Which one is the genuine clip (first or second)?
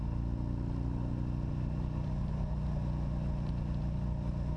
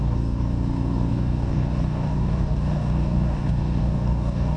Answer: first